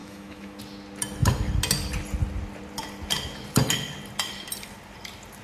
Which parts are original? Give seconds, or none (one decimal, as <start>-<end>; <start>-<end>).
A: 0.6-5.4